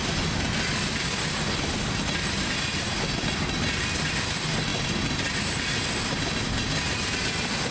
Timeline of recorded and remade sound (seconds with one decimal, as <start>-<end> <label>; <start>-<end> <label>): 0.0-4.7 recorded; 4.7-5.4 remade; 5.4-7.7 recorded